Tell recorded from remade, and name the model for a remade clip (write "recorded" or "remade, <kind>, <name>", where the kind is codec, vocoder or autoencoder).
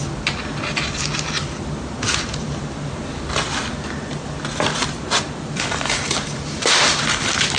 recorded